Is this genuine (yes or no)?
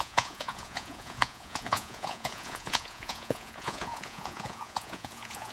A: no